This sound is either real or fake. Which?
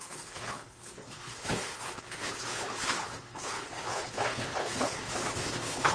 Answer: fake